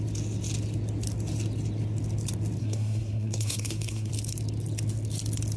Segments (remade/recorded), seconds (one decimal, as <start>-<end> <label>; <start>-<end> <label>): 0.0-2.6 recorded; 2.6-4.1 remade; 4.1-5.6 recorded